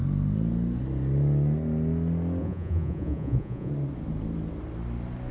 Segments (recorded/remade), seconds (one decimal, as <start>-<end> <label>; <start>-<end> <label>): 0.0-2.4 recorded; 2.4-3.7 remade; 3.7-5.3 recorded